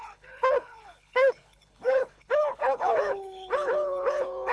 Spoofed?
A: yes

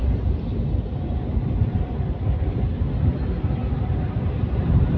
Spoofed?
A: no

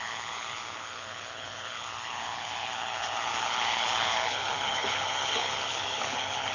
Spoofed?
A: yes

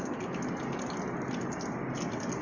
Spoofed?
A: no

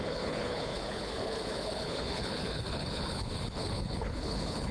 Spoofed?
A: yes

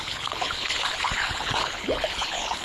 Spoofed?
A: yes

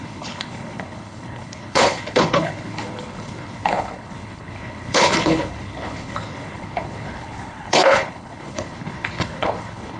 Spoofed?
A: yes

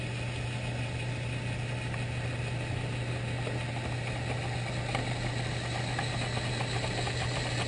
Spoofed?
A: no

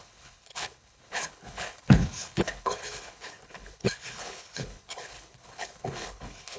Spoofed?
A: yes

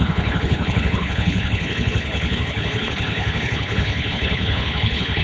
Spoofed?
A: yes